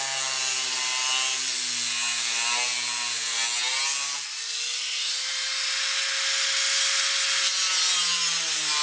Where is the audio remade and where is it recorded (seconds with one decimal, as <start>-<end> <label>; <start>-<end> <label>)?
0.0-8.8 recorded